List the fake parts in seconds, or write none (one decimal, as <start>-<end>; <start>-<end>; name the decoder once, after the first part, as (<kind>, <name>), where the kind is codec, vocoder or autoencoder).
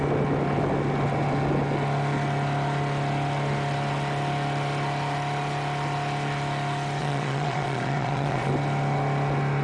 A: 7.0-8.5 (vocoder, Vocos)